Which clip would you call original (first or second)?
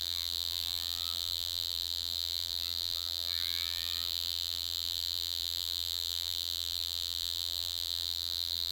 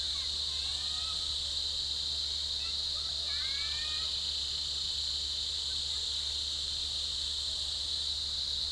second